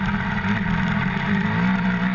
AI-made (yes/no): no